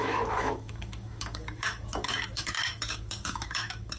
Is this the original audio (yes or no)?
no